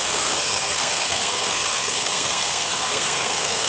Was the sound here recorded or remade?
remade